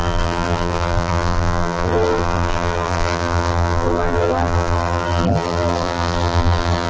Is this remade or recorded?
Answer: remade